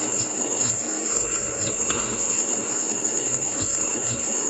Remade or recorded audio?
remade